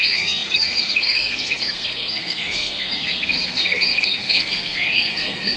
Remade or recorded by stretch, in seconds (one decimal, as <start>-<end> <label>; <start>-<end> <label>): 0.0-5.6 remade